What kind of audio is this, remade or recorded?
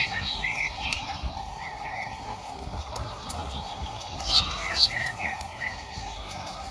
remade